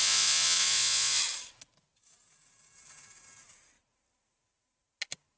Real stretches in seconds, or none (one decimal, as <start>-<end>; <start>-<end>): 1.2-5.4